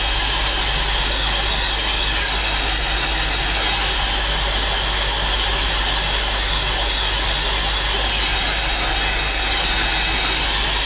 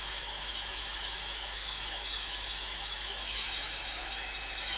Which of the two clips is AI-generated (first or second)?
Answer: second